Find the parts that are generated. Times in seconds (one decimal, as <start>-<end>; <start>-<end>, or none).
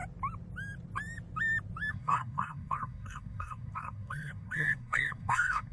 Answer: 1.9-5.7